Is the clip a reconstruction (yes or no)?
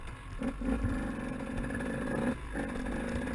no